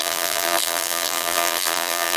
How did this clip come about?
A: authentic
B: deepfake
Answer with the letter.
B